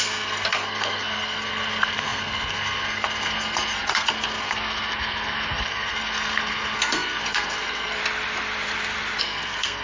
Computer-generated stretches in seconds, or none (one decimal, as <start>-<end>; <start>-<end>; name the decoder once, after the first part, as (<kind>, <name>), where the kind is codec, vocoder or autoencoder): 0.0-8.0 (codec, SNAC); 9.2-9.8